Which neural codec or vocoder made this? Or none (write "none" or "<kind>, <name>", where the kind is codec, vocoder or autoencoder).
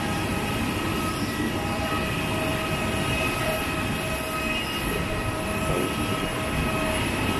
none